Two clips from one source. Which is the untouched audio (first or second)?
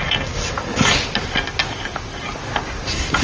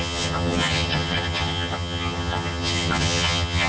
first